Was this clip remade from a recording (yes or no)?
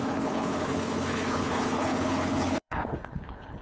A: yes